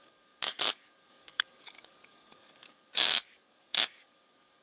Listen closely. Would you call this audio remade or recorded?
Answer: remade